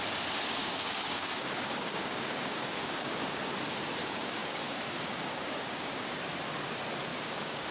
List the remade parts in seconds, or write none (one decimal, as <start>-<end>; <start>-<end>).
0.6-3.4; 4.0-6.1; 7.1-7.7